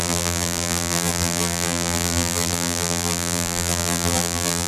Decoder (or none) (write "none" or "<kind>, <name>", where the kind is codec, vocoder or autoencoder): vocoder, BigVGAN v2